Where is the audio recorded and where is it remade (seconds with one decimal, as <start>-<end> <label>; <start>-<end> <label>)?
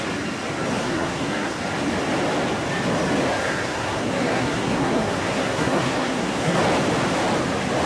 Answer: 0.0-0.8 recorded; 0.8-1.6 remade; 1.6-3.4 recorded; 3.4-6.6 remade; 6.6-7.9 recorded